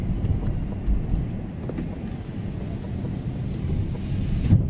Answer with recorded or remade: recorded